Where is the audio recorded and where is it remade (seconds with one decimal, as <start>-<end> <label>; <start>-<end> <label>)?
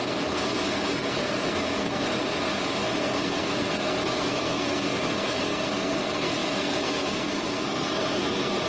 0.0-2.1 remade; 2.1-3.0 recorded; 3.0-8.7 remade